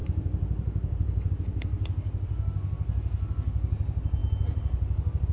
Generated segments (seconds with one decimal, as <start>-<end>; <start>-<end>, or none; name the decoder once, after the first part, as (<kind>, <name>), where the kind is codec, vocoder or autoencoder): 0.0-1.3 (vocoder, BigVGAN v2)